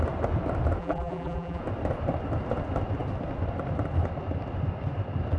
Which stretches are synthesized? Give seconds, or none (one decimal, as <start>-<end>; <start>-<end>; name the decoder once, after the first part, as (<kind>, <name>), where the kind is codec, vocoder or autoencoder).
0.8-1.6 (vocoder, BigVGAN v2)